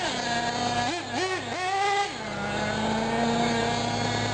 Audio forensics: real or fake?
real